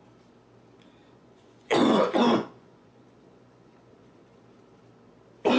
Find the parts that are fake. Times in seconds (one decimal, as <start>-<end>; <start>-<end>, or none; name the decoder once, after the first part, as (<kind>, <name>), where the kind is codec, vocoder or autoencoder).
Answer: 1.0-4.4 (vocoder, Vocos)